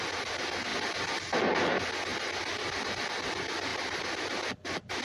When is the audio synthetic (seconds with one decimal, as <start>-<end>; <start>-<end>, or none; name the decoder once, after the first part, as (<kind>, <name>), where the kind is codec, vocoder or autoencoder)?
none